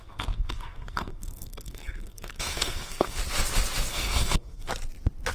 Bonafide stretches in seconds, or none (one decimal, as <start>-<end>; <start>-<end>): 3.2-3.9; 4.7-5.3